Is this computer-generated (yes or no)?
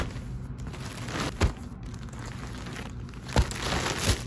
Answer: no